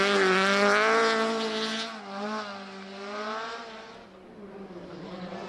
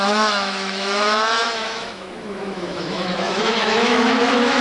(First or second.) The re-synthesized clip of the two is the second